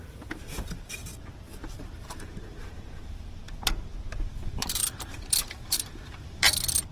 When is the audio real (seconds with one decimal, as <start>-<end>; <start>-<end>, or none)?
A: 1.1-2.0; 3.4-4.3